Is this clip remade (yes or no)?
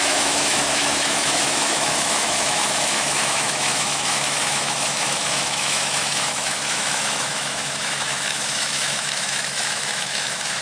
yes